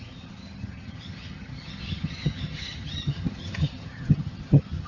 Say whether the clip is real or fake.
fake